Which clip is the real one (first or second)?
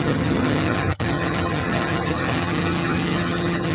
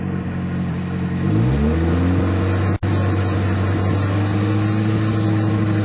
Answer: second